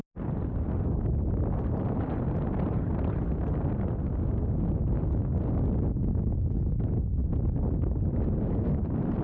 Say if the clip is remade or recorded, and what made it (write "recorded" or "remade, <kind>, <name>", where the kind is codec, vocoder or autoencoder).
recorded